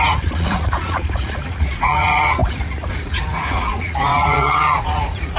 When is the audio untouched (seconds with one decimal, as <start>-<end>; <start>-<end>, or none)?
none